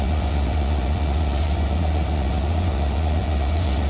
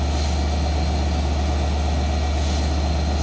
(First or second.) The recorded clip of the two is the second